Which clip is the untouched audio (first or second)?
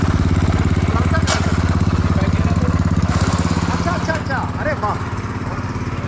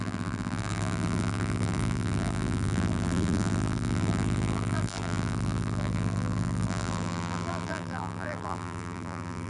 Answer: first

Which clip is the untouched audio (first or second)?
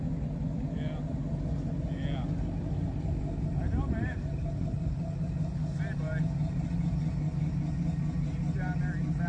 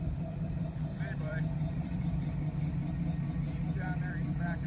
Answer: first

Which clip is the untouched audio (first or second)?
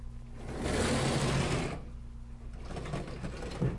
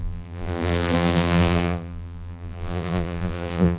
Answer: first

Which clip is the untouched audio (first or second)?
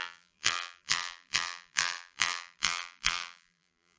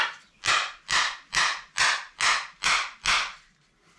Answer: second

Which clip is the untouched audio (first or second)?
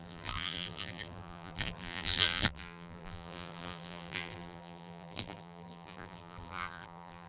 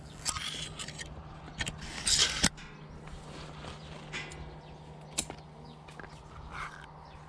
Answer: second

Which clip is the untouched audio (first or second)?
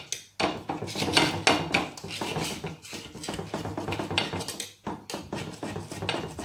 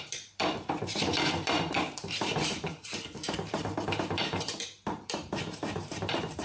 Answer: first